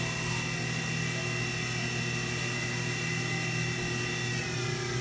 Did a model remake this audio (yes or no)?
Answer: no